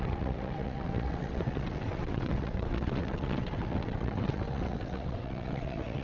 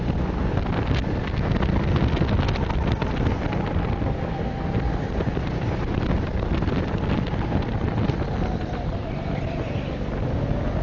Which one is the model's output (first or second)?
first